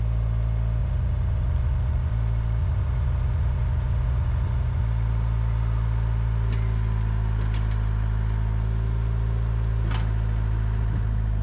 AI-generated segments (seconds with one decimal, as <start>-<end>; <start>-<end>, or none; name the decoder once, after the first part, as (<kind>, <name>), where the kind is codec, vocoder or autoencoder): 0.8-2.1 (vocoder, Vocos); 2.6-4.8